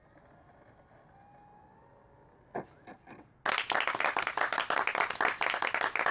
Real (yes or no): yes